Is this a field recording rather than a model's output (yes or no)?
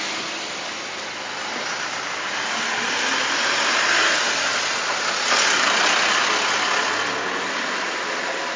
yes